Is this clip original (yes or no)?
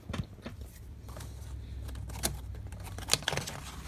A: yes